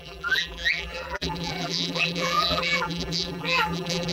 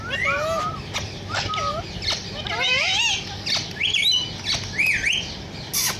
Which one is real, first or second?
second